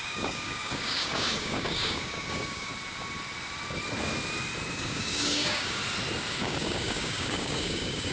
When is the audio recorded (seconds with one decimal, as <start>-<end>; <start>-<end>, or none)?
2.7-4.7; 5.8-6.3